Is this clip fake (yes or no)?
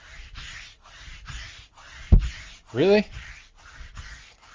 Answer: no